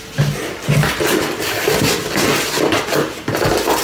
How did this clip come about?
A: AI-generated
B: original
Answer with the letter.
B